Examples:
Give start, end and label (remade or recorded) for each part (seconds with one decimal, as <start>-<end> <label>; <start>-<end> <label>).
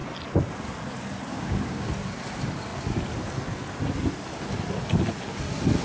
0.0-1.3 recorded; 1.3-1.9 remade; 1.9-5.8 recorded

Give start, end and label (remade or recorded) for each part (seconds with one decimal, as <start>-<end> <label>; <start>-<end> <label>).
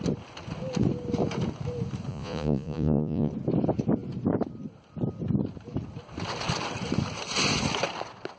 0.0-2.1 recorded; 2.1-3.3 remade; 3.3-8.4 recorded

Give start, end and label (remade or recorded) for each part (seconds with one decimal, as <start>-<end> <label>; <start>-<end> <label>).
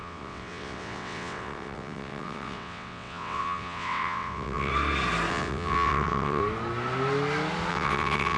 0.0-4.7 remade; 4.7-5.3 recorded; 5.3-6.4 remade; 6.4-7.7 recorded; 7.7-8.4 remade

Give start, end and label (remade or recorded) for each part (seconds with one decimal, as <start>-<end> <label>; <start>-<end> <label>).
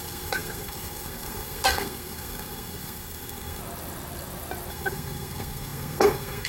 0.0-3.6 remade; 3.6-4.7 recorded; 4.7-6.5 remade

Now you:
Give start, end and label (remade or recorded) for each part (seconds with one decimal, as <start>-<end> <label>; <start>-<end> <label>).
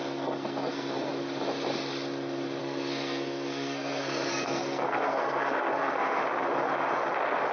0.0-1.1 remade; 1.1-2.6 recorded; 2.6-6.2 remade; 6.2-7.5 recorded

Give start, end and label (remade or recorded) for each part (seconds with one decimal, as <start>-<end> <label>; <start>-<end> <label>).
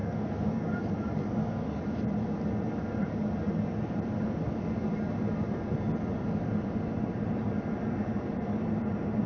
0.0-0.6 remade; 0.6-1.2 recorded; 1.2-1.8 remade; 1.8-9.3 recorded